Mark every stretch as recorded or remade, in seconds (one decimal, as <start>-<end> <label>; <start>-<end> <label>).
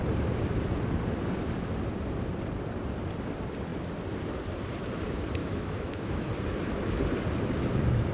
0.0-5.4 recorded; 5.4-6.3 remade; 6.3-8.1 recorded